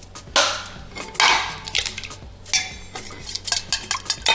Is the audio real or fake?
real